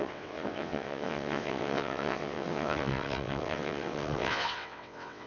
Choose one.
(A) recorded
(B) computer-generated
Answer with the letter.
B